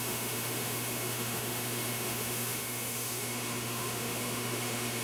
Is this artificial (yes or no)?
yes